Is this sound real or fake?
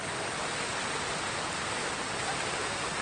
real